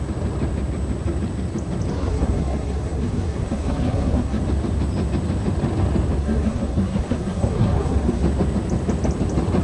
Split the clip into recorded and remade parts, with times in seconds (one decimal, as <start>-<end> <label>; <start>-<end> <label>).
0.0-1.9 recorded; 1.9-4.4 remade; 4.4-6.2 recorded; 6.2-8.2 remade; 8.2-9.6 recorded